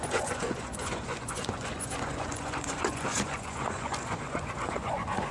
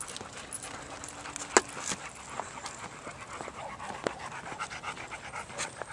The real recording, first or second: second